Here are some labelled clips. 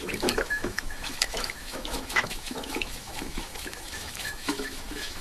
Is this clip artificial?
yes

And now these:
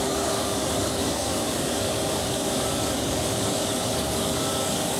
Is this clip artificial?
yes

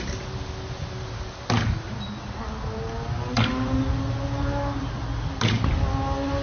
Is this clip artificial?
no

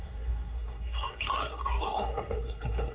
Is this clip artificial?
yes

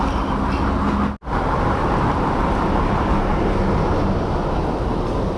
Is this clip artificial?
no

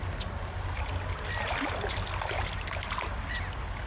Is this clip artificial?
no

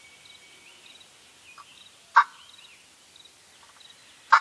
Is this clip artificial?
no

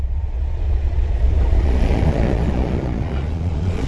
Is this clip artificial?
yes